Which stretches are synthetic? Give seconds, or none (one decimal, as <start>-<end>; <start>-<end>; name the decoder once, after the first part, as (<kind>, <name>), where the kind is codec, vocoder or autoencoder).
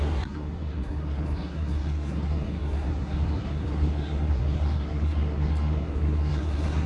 0.0-6.9 (codec, SNAC)